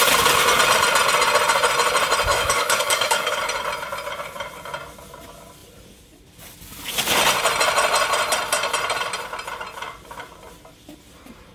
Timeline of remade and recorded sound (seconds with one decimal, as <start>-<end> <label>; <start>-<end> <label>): 0.0-2.3 recorded; 2.3-3.4 remade; 3.4-11.5 recorded